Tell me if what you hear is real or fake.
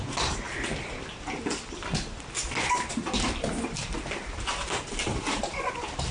real